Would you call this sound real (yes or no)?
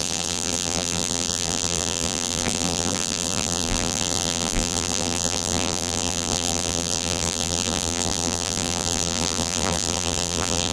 no